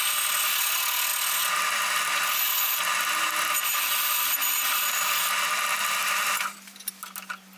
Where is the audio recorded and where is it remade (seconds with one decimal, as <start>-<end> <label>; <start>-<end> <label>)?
0.0-6.0 recorded; 6.0-6.9 remade; 6.9-7.6 recorded